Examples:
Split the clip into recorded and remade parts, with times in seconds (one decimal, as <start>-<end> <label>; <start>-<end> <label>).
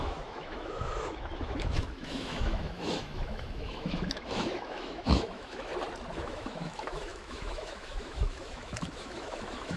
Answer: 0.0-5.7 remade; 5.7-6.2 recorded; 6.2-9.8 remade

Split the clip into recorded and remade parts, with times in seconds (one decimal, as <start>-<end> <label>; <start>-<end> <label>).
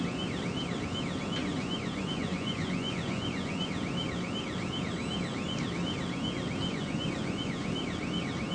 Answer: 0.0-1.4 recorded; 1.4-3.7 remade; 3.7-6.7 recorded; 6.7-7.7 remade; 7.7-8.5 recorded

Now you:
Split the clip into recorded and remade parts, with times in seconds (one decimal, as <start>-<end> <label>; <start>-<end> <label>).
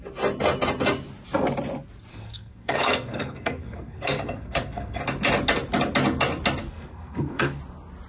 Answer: 0.0-2.1 recorded; 2.1-5.0 remade; 5.0-6.6 recorded; 6.6-7.6 remade; 7.6-8.1 recorded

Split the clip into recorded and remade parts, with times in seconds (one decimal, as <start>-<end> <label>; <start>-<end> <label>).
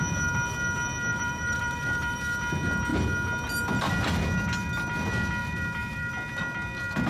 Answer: 0.0-1.1 recorded; 1.1-2.2 remade; 2.2-5.4 recorded; 5.4-6.1 remade; 6.1-7.1 recorded